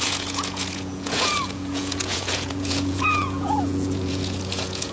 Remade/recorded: remade